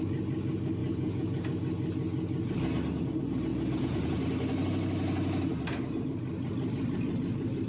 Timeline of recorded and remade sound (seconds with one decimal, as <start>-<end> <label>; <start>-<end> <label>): 0.0-0.8 recorded; 0.8-1.4 remade; 1.4-3.5 recorded; 3.5-4.1 remade; 4.1-7.7 recorded